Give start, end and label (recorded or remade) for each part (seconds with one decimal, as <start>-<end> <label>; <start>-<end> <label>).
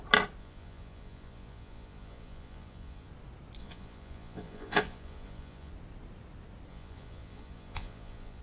0.0-0.4 recorded; 0.4-3.1 remade; 3.1-3.6 recorded; 3.6-5.7 remade; 5.7-6.7 recorded; 6.7-8.4 remade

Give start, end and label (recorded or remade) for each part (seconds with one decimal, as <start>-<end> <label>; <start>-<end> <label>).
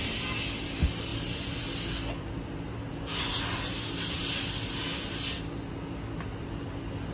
0.0-7.1 recorded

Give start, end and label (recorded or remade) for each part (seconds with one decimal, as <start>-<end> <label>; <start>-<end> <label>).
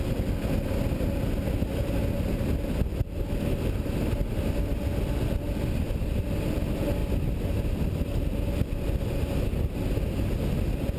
0.0-11.0 recorded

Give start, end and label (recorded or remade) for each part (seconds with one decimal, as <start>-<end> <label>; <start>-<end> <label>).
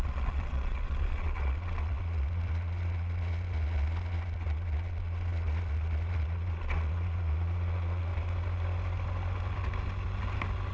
0.0-8.1 remade; 8.1-10.7 recorded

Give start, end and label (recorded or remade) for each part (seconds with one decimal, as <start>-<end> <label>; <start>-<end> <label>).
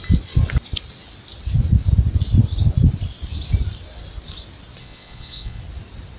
0.0-4.8 recorded; 4.8-5.6 remade; 5.6-6.2 recorded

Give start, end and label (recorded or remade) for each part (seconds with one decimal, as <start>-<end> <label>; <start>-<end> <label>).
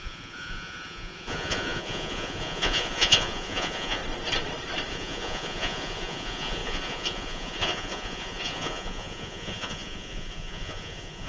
0.0-4.0 remade; 4.0-4.9 recorded; 4.9-11.3 remade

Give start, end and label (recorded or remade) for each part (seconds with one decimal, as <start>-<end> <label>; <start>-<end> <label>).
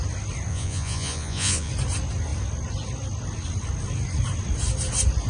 0.0-0.5 recorded; 0.5-1.7 remade; 1.7-5.3 recorded